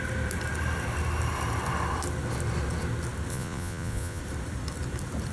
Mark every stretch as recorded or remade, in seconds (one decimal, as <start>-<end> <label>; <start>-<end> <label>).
0.0-3.3 recorded; 3.3-4.2 remade; 4.2-5.3 recorded